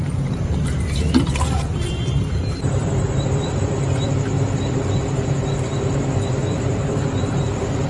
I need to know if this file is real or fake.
fake